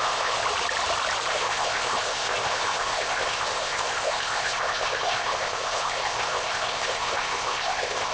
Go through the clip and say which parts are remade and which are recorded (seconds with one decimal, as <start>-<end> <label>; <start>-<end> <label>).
0.0-0.4 remade; 0.4-1.3 recorded; 1.3-8.1 remade